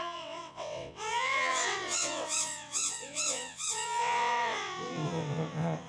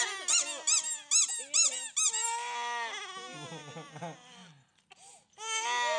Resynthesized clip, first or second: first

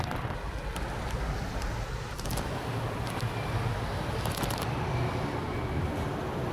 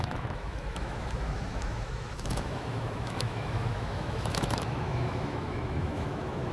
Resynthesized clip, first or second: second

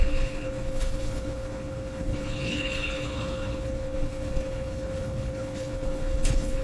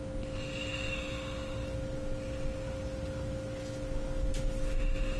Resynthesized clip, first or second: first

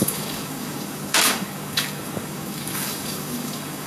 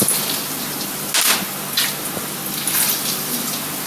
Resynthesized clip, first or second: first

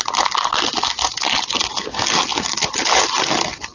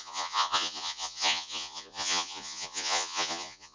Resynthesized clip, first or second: second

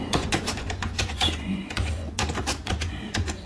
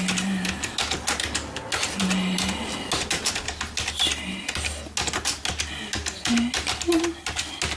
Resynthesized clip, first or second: first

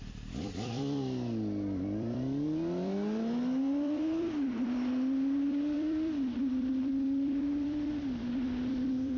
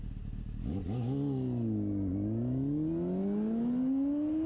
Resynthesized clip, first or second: first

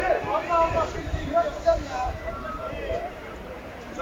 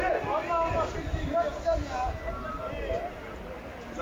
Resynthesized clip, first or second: first